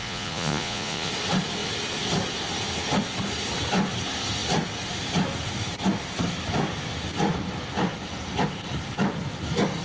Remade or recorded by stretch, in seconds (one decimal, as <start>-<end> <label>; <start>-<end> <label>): 0.0-1.1 remade; 1.1-9.8 recorded